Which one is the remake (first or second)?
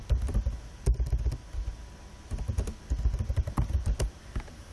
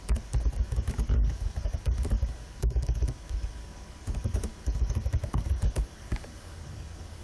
second